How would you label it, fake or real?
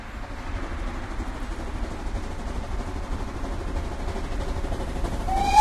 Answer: real